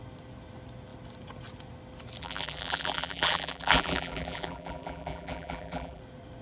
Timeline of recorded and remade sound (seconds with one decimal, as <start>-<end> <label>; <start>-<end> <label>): 0.0-2.2 recorded; 2.2-6.0 remade; 6.0-6.4 recorded